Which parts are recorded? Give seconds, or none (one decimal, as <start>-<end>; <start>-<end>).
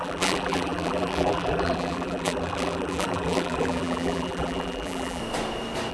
5.2-5.9